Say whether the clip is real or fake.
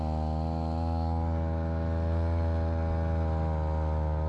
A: real